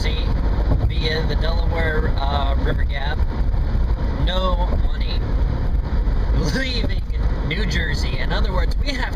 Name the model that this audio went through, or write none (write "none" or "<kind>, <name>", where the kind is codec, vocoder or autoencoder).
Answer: vocoder, BigVGAN v2